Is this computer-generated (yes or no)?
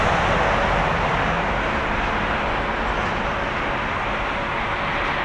no